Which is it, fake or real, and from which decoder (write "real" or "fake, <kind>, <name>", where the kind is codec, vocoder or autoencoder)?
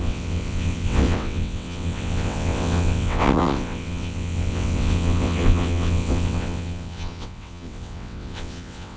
fake, vocoder, WaveNeXt